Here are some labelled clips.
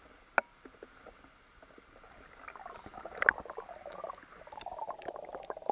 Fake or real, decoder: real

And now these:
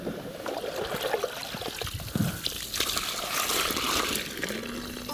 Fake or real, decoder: real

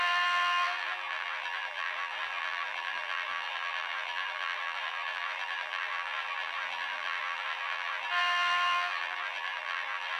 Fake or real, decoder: fake, vocoder, BigVGAN v2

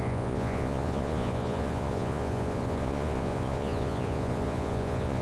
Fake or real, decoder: fake, vocoder, Vocos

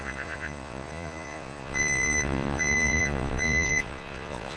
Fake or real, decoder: fake, vocoder, Vocos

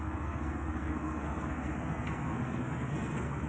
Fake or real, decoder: fake, codec, SNAC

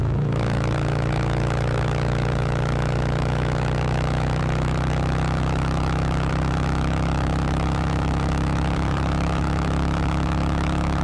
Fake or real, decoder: fake, autoencoder, DAC-VAE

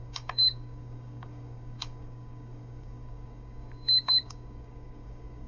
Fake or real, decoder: fake, codec, DAC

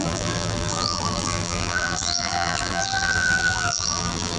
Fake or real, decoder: fake, vocoder, BigVGAN v2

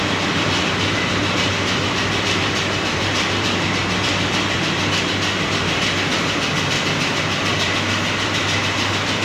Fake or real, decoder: fake, vocoder, BigVGAN v2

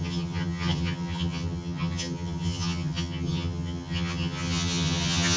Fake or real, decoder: fake, vocoder, HiFi-GAN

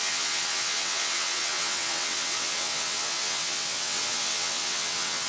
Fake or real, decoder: fake, vocoder, WaveNeXt